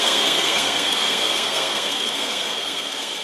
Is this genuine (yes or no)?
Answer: no